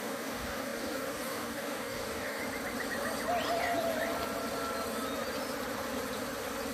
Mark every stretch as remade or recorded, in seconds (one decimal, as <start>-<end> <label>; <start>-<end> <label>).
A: 0.0-2.4 remade; 2.4-6.7 recorded